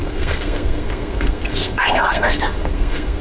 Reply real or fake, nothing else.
fake